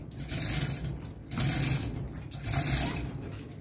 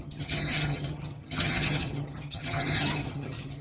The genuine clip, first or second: first